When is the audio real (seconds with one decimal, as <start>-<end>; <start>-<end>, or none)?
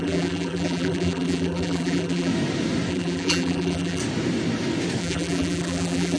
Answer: 2.3-2.9; 4.0-5.0